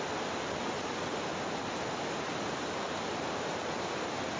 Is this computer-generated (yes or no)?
no